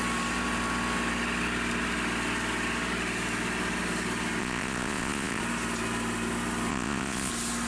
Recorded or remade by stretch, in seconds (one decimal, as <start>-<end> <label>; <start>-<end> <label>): 0.0-4.4 recorded; 4.4-5.4 remade; 5.4-6.7 recorded; 6.7-7.3 remade; 7.3-7.7 recorded